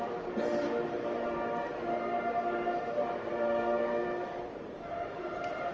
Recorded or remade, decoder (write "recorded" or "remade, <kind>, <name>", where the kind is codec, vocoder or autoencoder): remade, vocoder, BigVGAN v2